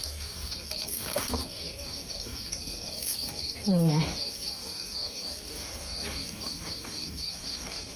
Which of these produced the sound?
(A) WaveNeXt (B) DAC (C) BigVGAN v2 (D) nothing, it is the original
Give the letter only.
B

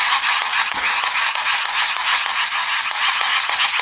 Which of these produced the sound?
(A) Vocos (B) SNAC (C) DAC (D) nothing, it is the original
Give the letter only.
D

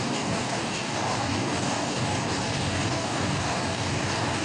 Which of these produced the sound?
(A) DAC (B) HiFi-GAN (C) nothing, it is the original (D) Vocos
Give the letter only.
A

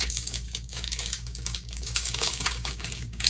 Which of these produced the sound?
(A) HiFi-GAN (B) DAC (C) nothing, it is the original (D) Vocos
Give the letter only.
B